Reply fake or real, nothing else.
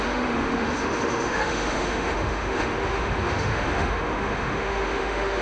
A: fake